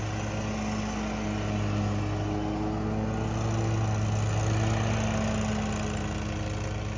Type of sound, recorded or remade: recorded